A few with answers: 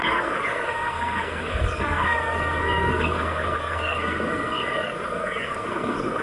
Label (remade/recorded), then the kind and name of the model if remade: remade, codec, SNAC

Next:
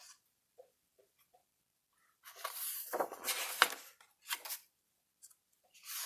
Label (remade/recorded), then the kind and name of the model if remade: remade, vocoder, BigVGAN v2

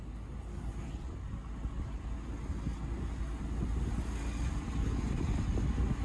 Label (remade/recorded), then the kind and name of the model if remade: recorded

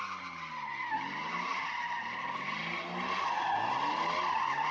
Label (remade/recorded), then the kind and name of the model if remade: recorded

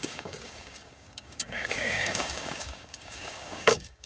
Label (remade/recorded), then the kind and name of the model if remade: remade, codec, DAC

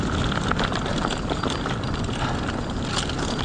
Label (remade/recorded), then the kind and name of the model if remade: recorded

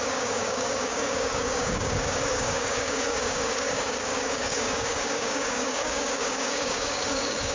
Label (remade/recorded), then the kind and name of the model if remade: remade, codec, DAC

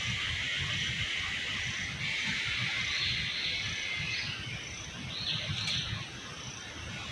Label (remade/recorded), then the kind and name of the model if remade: recorded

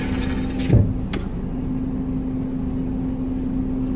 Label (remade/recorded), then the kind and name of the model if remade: recorded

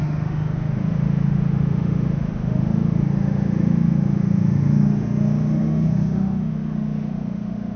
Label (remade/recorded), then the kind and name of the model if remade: remade, autoencoder, DAC-VAE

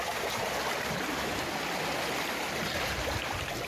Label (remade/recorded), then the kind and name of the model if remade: recorded